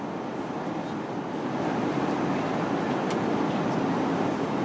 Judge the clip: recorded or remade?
recorded